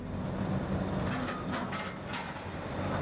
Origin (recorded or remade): recorded